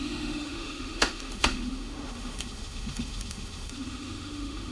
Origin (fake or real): fake